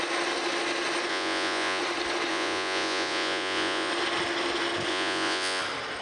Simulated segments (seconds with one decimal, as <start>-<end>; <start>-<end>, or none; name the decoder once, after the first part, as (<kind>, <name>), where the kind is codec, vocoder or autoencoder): 1.1-1.8 (vocoder, Vocos); 2.3-3.9; 4.9-5.6